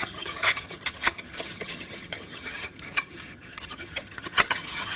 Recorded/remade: remade